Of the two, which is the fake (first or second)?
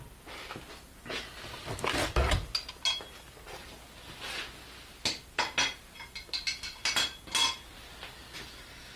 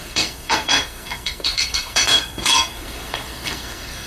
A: second